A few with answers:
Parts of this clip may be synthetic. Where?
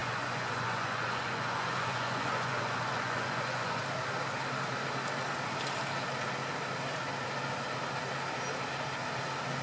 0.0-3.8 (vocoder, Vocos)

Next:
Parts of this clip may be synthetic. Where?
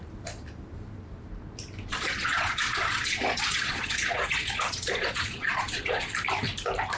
1.9-6.1 (vocoder, Vocos)